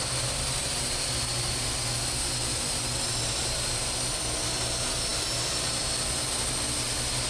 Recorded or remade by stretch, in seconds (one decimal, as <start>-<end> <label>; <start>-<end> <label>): 0.0-7.3 recorded